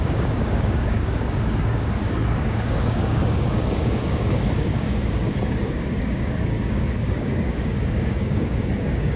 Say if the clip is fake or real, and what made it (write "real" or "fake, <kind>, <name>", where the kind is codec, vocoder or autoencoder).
fake, codec, DAC